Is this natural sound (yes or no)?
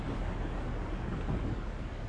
no